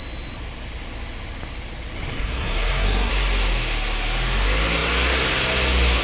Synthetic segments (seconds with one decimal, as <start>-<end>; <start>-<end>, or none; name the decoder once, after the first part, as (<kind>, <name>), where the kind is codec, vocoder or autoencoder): 2.1-3.1 (codec, SNAC)